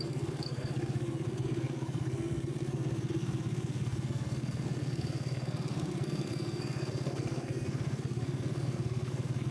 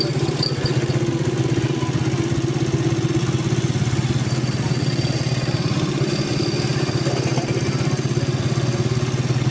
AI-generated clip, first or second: first